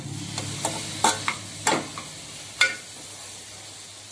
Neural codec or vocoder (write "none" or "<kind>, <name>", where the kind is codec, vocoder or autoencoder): none